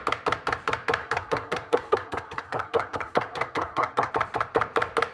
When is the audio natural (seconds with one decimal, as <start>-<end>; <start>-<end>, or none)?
0.0-1.0; 4.1-5.1